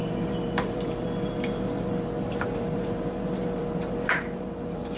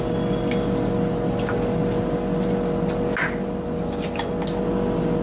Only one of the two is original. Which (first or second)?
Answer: second